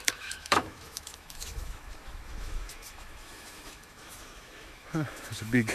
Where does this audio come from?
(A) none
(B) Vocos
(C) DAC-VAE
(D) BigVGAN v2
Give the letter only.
C